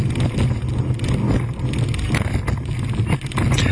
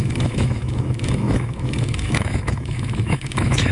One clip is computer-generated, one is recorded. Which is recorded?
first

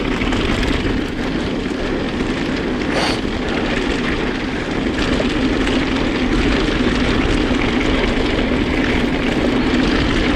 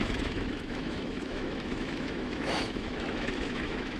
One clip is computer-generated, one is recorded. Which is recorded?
first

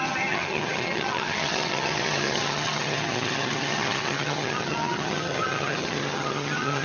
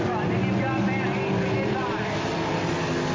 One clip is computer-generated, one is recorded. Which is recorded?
second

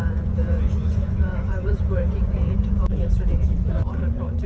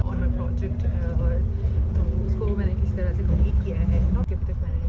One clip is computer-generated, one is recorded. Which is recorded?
second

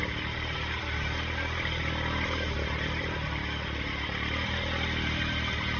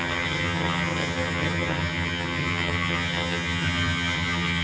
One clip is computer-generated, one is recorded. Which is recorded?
first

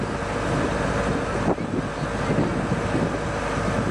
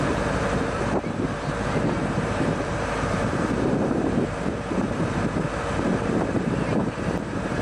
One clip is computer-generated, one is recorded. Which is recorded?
first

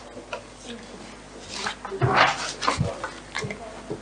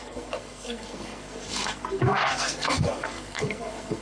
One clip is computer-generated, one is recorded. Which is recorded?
first